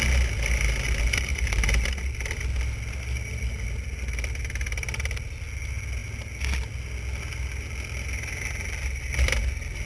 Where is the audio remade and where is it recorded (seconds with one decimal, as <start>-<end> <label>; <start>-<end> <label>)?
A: 0.0-9.9 recorded